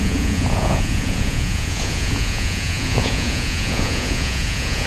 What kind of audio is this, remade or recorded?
remade